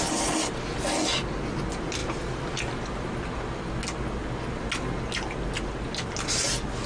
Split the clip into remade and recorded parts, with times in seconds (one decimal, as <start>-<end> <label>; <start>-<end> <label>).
0.0-6.9 recorded